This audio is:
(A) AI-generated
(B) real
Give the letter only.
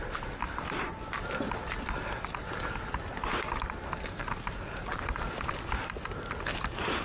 B